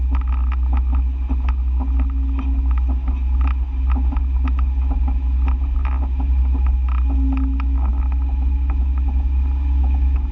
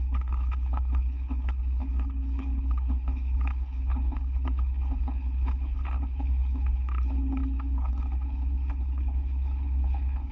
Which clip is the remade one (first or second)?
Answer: second